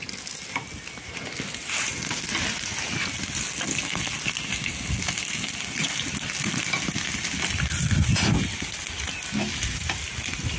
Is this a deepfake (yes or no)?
no